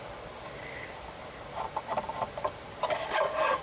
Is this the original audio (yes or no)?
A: no